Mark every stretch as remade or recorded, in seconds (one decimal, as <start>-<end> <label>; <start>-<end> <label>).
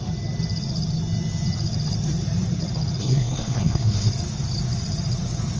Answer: 0.0-3.0 recorded; 3.0-4.1 remade; 4.1-5.6 recorded